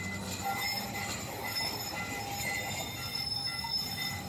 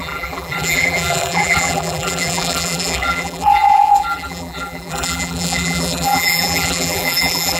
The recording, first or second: first